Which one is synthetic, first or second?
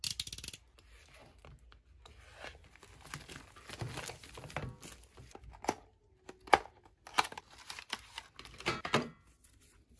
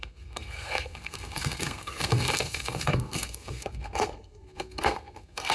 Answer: second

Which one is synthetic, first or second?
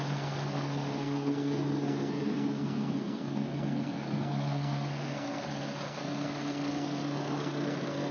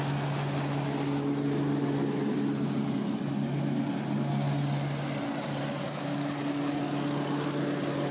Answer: first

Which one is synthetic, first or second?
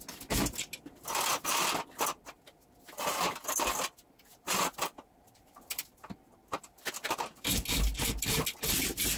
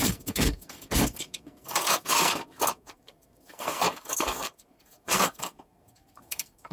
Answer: second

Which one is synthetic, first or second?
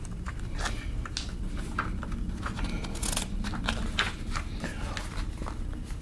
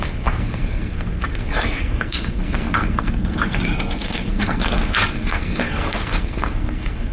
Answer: second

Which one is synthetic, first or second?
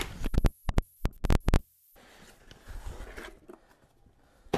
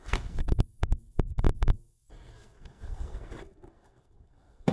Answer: second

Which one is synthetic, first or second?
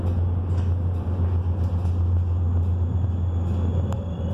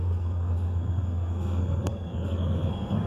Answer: second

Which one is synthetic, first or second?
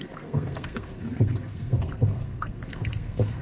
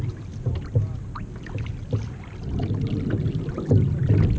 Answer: first